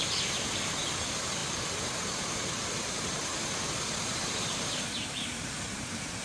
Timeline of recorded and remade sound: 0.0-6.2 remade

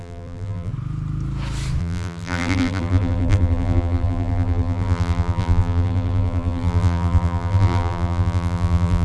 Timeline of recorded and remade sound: 0.0-0.7 remade; 0.7-1.8 recorded; 1.8-9.0 remade

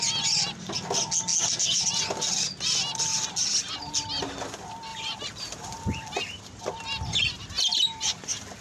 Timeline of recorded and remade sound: 0.0-3.1 recorded; 3.1-3.8 remade; 3.8-4.9 recorded; 4.9-6.6 remade; 6.6-7.7 recorded; 7.7-8.6 remade

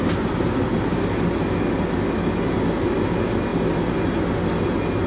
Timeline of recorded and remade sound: 0.0-5.1 recorded

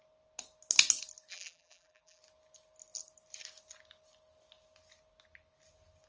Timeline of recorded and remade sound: 0.0-1.3 recorded; 1.3-2.2 remade; 2.2-6.1 recorded

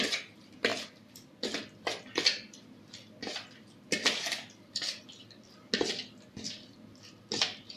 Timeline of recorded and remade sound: 0.0-7.8 recorded

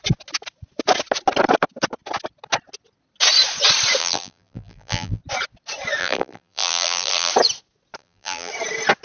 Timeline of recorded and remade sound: 0.0-4.0 recorded; 4.0-5.2 remade; 5.2-6.0 recorded; 6.0-7.3 remade; 7.3-8.0 recorded; 8.0-8.5 remade; 8.5-9.0 recorded

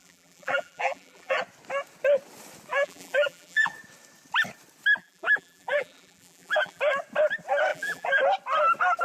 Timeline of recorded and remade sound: 0.0-1.4 remade; 1.4-2.7 recorded; 2.7-3.7 remade; 3.7-5.0 recorded; 5.0-6.8 remade; 6.8-7.7 recorded; 7.7-8.2 remade; 8.2-9.0 recorded